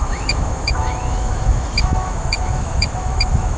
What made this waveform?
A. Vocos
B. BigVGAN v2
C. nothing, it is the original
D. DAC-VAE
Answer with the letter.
D